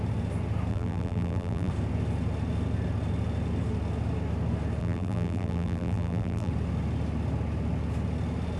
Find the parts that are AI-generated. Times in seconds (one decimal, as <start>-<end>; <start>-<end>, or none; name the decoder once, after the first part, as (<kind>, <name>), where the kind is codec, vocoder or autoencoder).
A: 0.7-1.7 (vocoder, BigVGAN v2); 4.8-6.5